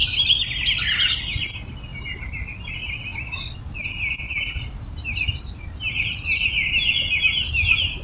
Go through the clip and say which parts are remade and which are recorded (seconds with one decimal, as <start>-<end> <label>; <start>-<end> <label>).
0.0-8.0 recorded